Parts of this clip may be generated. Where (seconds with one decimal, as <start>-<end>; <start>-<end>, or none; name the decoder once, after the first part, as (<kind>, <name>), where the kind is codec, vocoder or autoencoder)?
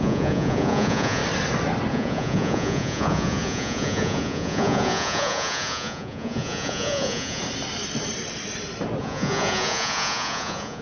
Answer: 0.0-1.2 (vocoder, Vocos); 1.9-7.4; 9.0-10.8